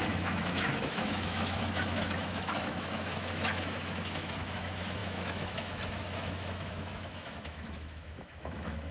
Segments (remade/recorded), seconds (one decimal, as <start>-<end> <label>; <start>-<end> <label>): 0.0-8.9 remade